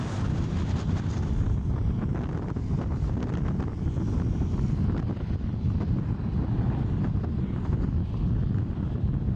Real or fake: real